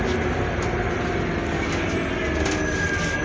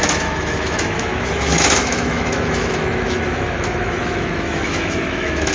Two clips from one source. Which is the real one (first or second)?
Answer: first